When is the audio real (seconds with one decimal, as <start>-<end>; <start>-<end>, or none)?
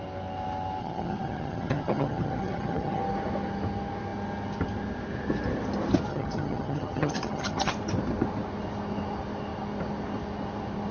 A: 0.0-0.8; 3.0-6.1; 7.7-10.9